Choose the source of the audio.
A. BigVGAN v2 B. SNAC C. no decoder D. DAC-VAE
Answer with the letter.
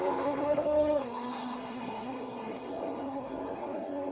B